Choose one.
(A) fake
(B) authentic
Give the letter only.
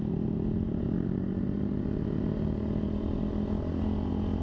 B